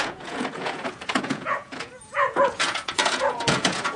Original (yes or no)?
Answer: no